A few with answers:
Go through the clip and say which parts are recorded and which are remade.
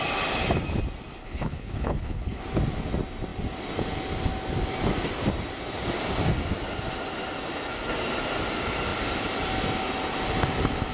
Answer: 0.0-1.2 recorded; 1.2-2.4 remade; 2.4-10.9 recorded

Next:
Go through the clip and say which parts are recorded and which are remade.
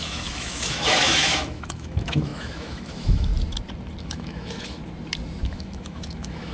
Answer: 0.0-3.3 remade; 3.3-4.0 recorded; 4.0-4.8 remade; 4.8-5.4 recorded; 5.4-6.5 remade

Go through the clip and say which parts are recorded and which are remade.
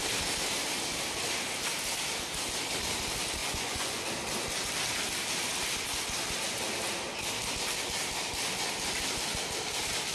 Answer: 0.0-3.4 recorded; 3.4-4.0 remade; 4.0-10.1 recorded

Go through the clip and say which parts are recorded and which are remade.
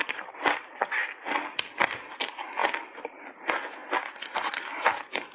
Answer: 0.0-0.7 remade; 0.7-2.6 recorded; 2.6-3.2 remade; 3.2-5.3 recorded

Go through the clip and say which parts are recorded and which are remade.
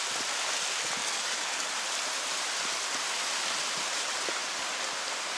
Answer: 0.0-1.0 recorded; 1.0-1.7 remade; 1.7-5.4 recorded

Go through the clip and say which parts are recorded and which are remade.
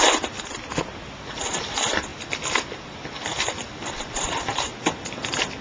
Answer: 0.0-2.1 recorded; 2.1-4.3 remade; 4.3-4.7 recorded; 4.7-5.6 remade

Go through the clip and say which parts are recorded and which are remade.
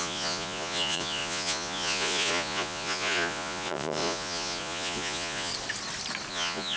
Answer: 0.0-5.5 remade; 5.5-6.3 recorded; 6.3-6.8 remade